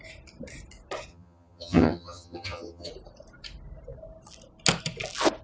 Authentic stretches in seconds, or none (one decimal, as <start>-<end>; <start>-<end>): 0.0-1.1; 2.9-5.4